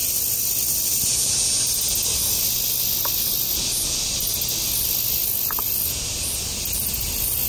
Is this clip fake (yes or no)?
no